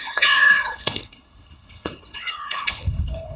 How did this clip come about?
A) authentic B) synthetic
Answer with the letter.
B